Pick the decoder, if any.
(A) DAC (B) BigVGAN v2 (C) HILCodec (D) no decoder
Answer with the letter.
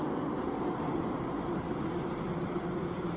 D